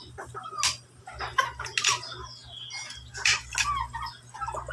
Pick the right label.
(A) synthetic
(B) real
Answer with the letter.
B